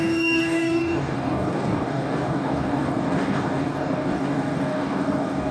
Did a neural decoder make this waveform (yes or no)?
yes